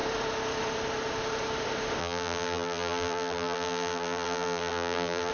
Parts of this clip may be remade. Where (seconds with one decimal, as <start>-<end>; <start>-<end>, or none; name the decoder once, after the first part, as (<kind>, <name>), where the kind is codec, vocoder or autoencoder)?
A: 2.0-5.3 (vocoder, BigVGAN v2)